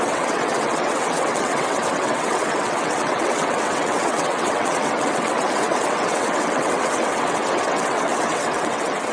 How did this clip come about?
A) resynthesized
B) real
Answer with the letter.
A